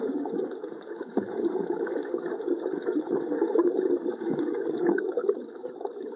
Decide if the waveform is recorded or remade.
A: remade